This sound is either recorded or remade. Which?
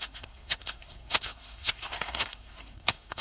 remade